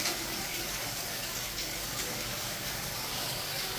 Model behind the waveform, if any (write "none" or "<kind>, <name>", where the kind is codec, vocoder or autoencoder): codec, DAC